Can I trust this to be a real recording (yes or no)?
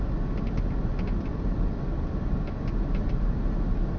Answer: yes